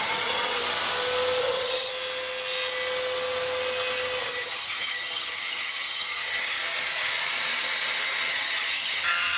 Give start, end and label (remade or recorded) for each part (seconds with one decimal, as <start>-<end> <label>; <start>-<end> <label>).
0.0-0.6 remade; 0.6-1.4 recorded; 1.4-1.9 remade; 1.9-4.2 recorded; 4.2-6.6 remade; 6.6-8.3 recorded; 8.3-9.4 remade